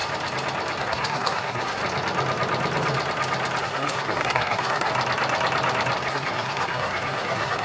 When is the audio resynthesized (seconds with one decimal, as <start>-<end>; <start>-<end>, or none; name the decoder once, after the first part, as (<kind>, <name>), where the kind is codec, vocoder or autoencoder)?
0.8-1.8 (codec, SNAC); 3.6-4.9; 6.1-7.6